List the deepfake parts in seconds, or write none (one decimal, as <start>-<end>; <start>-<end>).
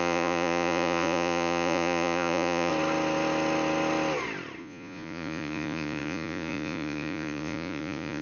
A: 0.0-2.7; 4.6-8.2